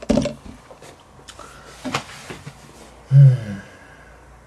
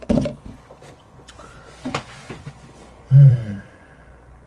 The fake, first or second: second